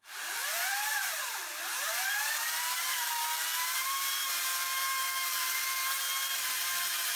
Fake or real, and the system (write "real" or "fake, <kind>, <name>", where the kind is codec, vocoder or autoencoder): fake, vocoder, BigVGAN v2